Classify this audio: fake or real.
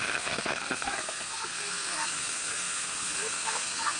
fake